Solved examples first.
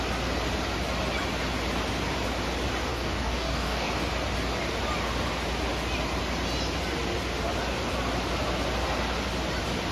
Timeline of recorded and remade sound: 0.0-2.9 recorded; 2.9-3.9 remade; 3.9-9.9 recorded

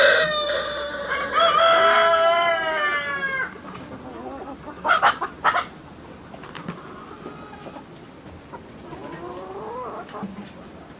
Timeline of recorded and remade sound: 0.0-4.1 recorded; 4.1-5.3 remade; 5.3-11.0 recorded

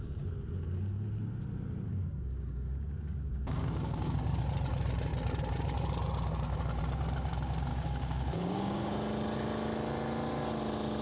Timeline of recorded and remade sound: 0.0-1.9 recorded; 1.9-4.4 remade; 4.4-7.7 recorded; 7.7-8.9 remade; 8.9-11.0 recorded